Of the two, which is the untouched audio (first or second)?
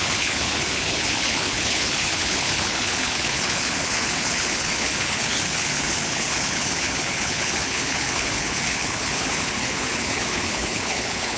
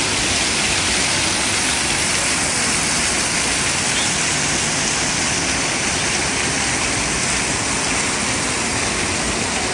second